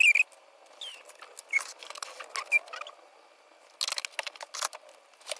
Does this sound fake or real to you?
real